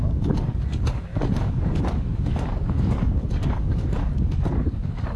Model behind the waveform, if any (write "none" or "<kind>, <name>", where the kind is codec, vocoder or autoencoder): codec, DAC